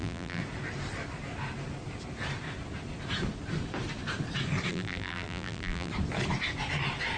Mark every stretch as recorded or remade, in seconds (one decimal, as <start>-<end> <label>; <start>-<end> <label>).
0.0-0.4 remade; 0.4-4.7 recorded; 4.7-5.9 remade; 5.9-7.2 recorded